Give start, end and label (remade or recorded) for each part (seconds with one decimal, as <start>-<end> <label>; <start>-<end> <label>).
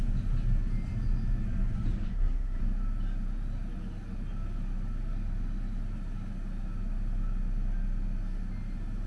0.0-2.1 recorded; 2.1-2.6 remade; 2.6-9.1 recorded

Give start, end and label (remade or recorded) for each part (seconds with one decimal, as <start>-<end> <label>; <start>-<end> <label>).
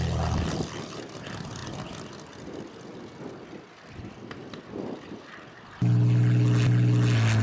0.0-7.4 recorded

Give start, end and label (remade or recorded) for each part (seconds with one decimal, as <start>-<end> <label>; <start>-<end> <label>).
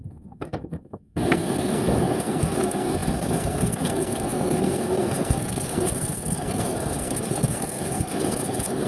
0.0-8.9 remade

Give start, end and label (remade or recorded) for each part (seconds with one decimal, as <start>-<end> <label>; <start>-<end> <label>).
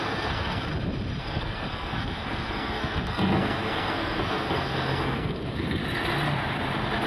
0.0-0.7 remade; 0.7-1.2 recorded; 1.2-5.8 remade; 5.8-7.1 recorded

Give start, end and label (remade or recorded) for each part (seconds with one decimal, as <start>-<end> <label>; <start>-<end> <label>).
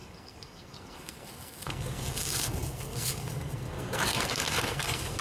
0.0-5.2 remade